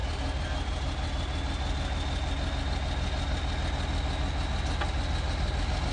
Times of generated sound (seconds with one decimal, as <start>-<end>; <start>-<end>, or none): none